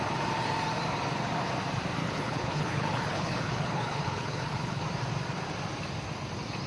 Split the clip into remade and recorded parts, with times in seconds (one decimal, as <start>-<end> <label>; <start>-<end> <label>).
0.0-2.0 recorded; 2.0-4.8 remade; 4.8-6.7 recorded